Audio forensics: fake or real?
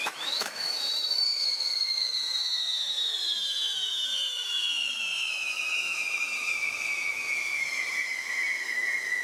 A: fake